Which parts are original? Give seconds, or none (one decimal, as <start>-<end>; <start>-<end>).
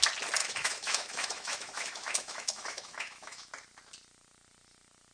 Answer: 0.0-0.4; 3.5-5.1